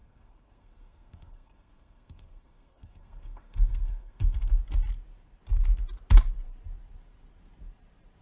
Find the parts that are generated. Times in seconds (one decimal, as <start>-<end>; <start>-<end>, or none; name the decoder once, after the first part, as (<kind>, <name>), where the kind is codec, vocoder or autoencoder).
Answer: 0.0-4.6 (codec, SNAC)